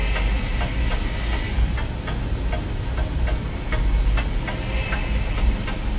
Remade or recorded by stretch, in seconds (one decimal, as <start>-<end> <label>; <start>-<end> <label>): 0.0-6.0 recorded